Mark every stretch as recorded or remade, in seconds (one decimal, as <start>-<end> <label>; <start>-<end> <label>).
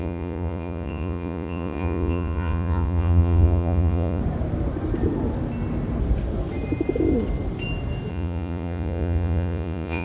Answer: 0.0-4.2 remade; 4.2-8.1 recorded; 8.1-10.0 remade